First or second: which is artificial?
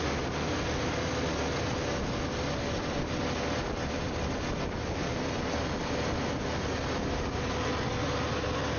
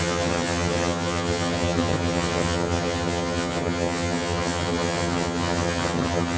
second